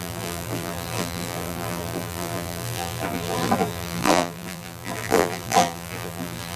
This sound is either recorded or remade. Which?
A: remade